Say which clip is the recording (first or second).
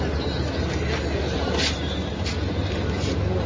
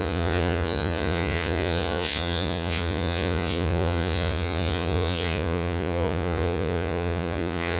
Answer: first